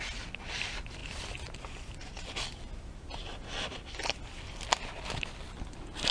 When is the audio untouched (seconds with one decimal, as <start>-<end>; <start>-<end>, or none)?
0.0-6.1